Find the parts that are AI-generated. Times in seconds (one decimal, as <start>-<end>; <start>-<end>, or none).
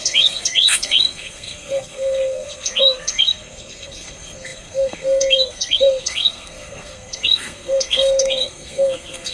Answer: 0.0-9.3